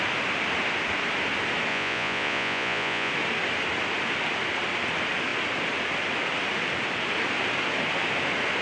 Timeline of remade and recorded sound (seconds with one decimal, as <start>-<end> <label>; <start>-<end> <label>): 0.0-1.7 recorded; 1.7-3.1 remade; 3.1-8.6 recorded